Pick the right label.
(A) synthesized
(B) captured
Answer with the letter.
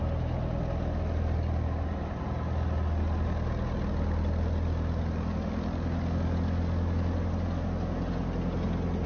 B